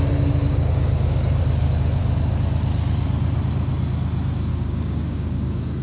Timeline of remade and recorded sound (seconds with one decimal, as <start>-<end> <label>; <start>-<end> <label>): 0.0-0.5 recorded; 0.5-1.4 remade; 1.4-4.5 recorded; 4.5-5.8 remade